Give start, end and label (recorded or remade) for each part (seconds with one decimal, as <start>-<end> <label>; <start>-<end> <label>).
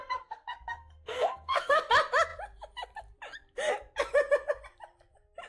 0.0-1.8 remade; 1.8-5.5 recorded